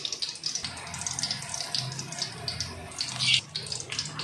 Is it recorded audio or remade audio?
recorded